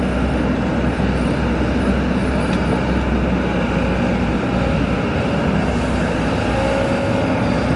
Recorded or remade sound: recorded